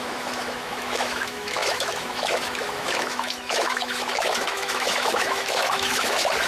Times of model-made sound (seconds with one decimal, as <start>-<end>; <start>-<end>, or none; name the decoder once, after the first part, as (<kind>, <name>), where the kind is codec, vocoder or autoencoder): 0.0-6.5 (autoencoder, DAC-VAE)